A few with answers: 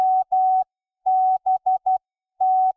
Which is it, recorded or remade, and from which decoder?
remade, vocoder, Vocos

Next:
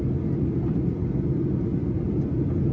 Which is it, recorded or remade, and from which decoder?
recorded